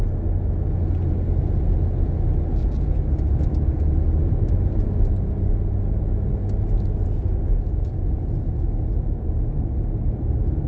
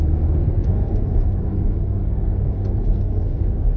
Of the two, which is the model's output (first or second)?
second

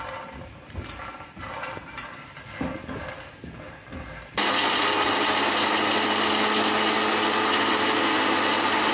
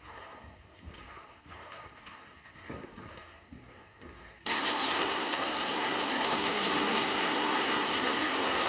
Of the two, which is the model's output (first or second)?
second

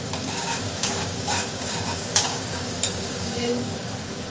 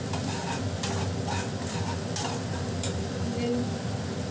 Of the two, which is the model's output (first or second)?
first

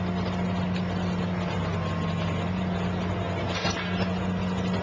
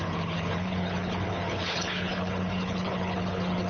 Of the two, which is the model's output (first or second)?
second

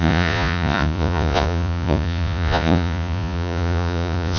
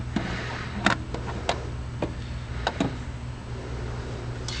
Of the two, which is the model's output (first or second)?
first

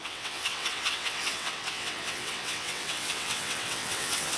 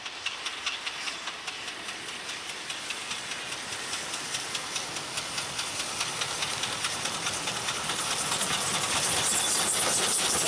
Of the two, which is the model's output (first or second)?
first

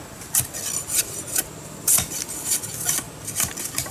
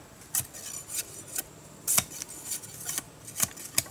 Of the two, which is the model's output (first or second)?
first